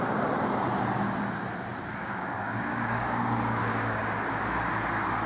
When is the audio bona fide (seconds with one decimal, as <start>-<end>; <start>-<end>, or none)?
0.0-2.0; 4.0-5.3

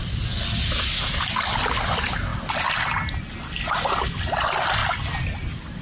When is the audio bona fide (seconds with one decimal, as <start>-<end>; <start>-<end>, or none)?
0.0-5.8

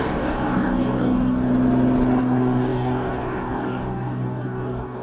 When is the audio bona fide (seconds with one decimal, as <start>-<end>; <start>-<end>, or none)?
1.5-2.2

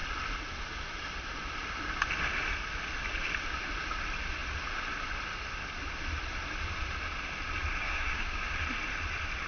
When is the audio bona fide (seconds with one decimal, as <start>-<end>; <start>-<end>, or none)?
0.0-7.8; 8.4-9.5